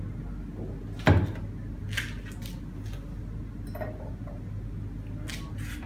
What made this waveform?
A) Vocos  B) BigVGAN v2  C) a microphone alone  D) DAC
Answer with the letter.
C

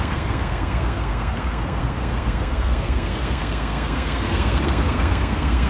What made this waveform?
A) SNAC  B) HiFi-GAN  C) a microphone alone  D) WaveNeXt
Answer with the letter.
A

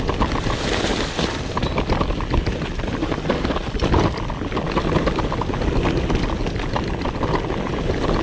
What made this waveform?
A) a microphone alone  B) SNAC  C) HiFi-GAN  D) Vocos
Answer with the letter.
A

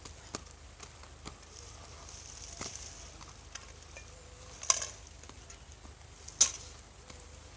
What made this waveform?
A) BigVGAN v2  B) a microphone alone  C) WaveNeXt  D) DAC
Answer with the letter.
B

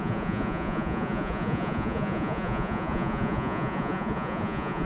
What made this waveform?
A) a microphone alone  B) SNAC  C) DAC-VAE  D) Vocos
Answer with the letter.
D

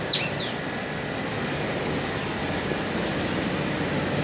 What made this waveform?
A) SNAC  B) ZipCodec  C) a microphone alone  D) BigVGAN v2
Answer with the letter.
C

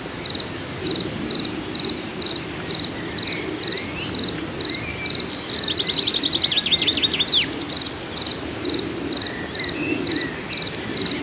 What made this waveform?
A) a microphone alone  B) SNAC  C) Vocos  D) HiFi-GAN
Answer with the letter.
A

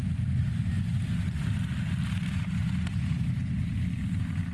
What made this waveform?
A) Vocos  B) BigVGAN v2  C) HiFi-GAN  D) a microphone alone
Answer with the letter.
D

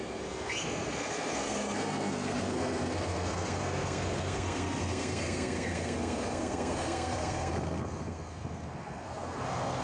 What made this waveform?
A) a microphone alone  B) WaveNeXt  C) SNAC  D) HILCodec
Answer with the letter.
C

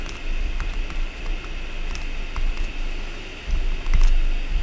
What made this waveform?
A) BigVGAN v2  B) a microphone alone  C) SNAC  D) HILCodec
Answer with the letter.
B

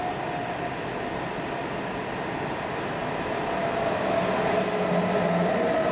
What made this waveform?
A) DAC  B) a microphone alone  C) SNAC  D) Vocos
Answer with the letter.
B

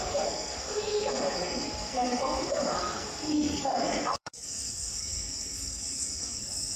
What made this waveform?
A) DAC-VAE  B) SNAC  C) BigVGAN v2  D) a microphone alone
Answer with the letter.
B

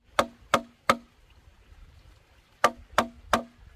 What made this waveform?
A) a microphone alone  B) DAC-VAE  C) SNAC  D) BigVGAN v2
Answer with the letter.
A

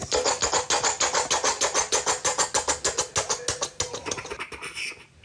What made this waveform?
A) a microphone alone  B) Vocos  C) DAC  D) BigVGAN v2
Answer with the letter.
A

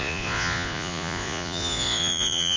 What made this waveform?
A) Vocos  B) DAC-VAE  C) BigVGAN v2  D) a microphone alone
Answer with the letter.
A